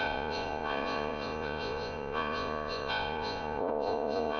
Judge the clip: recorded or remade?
remade